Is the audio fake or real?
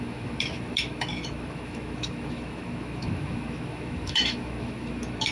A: fake